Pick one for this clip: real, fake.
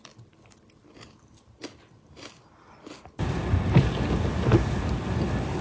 real